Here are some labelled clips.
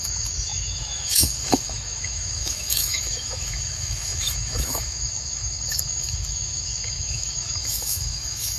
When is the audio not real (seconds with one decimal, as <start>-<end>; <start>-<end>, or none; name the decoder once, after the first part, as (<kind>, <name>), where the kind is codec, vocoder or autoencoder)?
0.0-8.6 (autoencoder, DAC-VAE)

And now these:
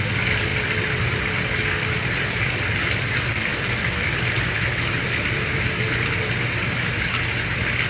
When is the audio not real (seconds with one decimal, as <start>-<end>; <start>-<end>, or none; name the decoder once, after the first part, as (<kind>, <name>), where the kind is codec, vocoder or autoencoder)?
0.5-1.3 (vocoder, BigVGAN v2); 1.8-5.8

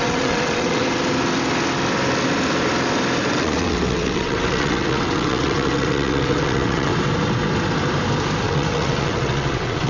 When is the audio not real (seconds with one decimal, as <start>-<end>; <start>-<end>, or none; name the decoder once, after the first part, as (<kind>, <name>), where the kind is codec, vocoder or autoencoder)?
0.0-0.8 (vocoder, WaveNeXt); 3.3-6.9; 8.4-9.9

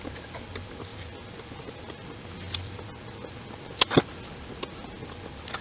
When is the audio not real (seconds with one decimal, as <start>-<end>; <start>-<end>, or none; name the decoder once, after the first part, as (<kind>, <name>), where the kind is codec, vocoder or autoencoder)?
none

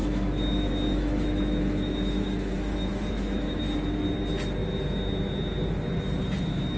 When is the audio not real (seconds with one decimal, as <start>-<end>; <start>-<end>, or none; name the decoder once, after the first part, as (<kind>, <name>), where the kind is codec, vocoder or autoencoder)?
0.0-3.6 (autoencoder, DAC-VAE)

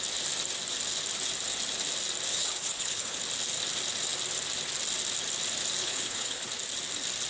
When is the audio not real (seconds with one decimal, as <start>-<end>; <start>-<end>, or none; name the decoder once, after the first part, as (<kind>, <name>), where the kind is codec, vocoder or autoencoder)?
2.3-3.2 (codec, HILCodec); 5.8-6.5

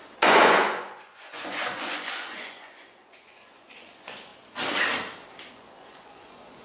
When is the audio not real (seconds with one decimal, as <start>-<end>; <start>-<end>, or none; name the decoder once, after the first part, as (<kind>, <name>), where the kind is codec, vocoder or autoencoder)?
0.0-4.3 (vocoder, Vocos); 5.5-6.6